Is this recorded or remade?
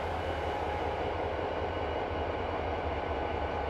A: recorded